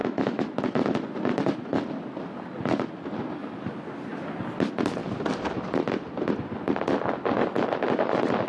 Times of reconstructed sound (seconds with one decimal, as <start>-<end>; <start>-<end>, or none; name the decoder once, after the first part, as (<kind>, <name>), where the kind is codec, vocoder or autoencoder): 0.0-0.6 (autoencoder, DAC-VAE)